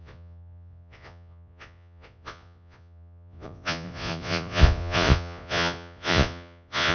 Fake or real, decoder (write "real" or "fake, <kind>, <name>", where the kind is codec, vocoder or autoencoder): fake, vocoder, Vocos